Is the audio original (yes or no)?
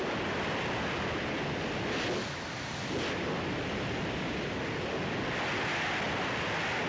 yes